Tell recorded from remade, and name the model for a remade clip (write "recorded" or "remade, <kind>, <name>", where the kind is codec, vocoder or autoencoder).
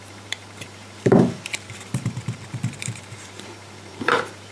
remade, vocoder, BigVGAN v2